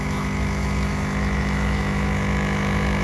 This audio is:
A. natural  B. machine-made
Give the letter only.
B